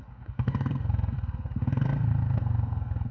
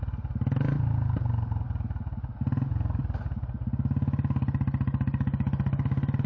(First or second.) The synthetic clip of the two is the first